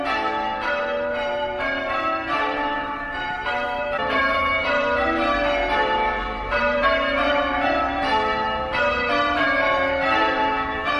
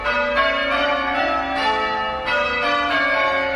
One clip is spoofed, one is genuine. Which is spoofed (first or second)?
first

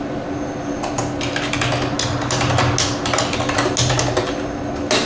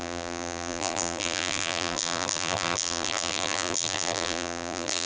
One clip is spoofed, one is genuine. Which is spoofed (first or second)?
second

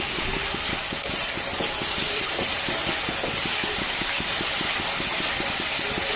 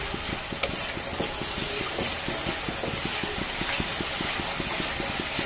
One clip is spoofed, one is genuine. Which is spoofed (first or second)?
first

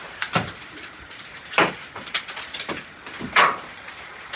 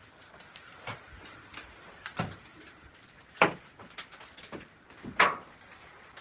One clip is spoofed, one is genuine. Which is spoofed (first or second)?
first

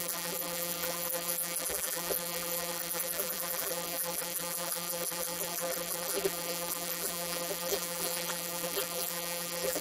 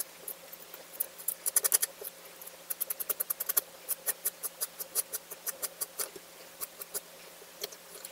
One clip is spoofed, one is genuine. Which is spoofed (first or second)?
first